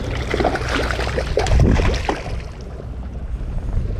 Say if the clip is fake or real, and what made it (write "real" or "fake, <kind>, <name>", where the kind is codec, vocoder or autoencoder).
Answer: real